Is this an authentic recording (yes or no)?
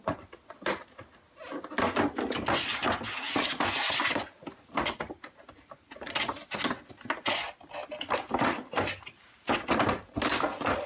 yes